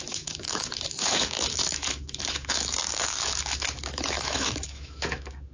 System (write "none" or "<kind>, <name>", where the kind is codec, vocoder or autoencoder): autoencoder, DAC-VAE